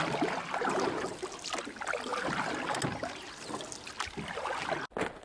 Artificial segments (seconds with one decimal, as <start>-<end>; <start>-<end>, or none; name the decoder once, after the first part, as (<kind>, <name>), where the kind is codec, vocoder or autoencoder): none